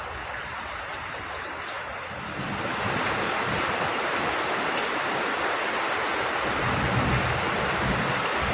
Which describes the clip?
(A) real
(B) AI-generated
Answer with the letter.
A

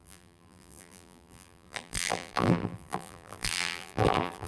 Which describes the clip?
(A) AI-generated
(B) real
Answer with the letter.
A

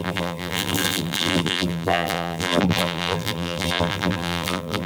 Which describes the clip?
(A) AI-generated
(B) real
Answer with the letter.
A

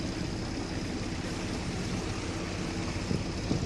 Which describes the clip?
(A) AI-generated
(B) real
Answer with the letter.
B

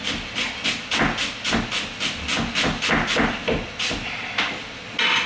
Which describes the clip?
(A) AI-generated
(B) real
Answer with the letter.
B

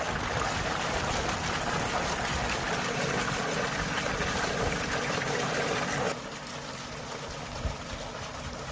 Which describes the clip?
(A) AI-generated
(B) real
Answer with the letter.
B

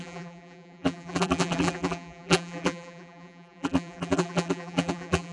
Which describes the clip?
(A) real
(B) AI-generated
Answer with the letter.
B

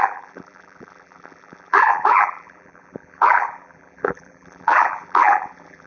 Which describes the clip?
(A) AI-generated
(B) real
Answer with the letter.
A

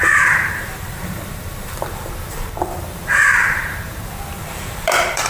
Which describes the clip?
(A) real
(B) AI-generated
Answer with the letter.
B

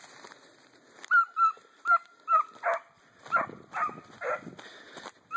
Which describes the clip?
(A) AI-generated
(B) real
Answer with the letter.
B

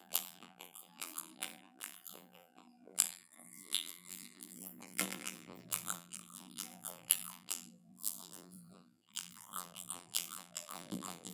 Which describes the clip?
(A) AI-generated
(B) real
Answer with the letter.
A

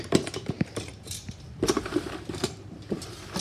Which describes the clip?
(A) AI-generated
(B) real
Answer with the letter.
A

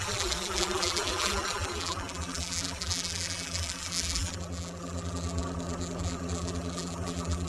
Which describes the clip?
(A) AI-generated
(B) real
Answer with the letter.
A